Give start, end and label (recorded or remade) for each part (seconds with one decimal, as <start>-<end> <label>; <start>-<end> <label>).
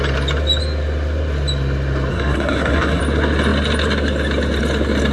0.0-2.1 recorded; 2.1-3.0 remade; 3.0-5.1 recorded